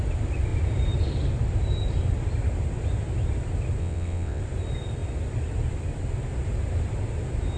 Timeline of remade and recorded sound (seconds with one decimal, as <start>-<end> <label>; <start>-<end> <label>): 0.0-3.8 recorded; 3.8-4.4 remade; 4.4-7.6 recorded